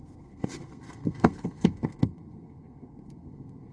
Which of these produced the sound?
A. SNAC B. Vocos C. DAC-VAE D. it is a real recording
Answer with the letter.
A